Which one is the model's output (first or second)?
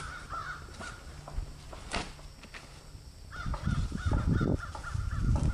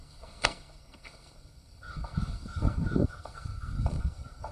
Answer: second